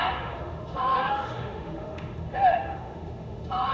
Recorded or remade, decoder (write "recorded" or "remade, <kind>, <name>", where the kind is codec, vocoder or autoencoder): remade, autoencoder, DAC-VAE